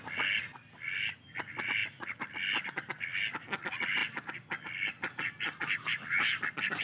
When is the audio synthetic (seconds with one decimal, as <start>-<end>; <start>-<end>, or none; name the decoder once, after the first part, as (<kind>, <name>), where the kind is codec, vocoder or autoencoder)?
none

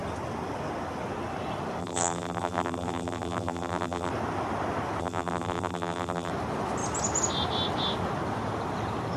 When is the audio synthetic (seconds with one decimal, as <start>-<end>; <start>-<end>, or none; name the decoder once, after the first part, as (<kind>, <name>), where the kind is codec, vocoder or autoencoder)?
1.8-4.1 (vocoder, BigVGAN v2); 5.0-6.3